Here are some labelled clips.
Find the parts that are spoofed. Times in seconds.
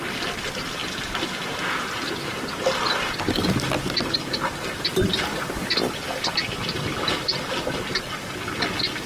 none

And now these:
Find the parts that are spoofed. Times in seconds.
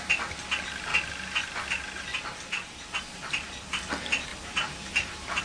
2.1-3.7 (vocoder, BigVGAN v2); 4.3-5.4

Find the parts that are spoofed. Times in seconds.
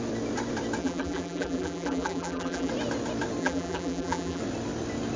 0.8-2.7 (vocoder, BigVGAN v2); 3.4-4.4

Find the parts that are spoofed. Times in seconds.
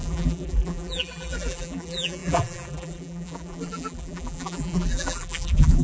0.0-5.8 (vocoder, BigVGAN v2)